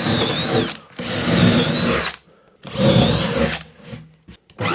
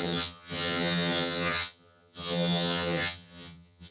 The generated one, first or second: second